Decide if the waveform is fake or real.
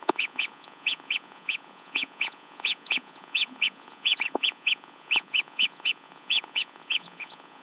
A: fake